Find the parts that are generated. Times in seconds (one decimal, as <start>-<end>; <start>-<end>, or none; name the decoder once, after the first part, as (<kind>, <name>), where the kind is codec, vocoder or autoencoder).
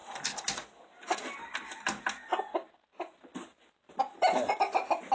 none